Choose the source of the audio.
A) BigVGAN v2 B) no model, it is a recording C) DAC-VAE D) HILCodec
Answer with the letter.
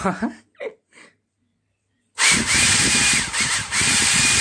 A